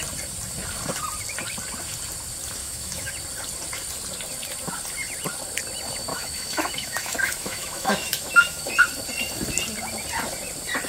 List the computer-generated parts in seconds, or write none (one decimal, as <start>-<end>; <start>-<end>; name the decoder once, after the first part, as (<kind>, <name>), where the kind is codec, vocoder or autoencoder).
2.6-3.1 (autoencoder, DAC-VAE); 6.1-8.7